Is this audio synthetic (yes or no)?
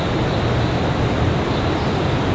no